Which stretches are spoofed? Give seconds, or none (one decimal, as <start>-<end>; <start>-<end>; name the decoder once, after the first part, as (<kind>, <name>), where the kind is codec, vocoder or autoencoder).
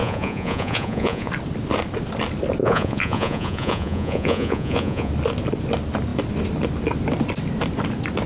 0.0-1.3 (vocoder, Vocos); 2.6-5.1